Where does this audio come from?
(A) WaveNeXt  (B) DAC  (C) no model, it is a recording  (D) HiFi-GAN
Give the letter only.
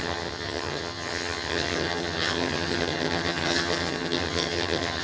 D